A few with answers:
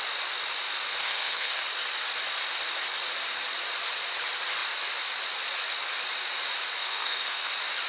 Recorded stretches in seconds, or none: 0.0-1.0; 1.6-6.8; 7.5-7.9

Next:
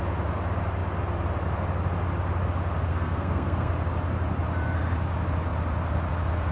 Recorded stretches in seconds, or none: 0.0-2.9; 3.7-6.5

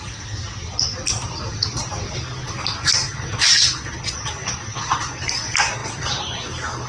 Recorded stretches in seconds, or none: 0.0-6.9

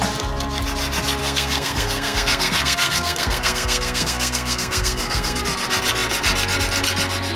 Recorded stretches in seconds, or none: 0.0-1.2; 5.4-7.4

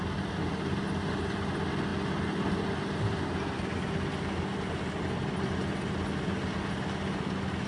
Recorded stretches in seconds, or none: 0.0-7.7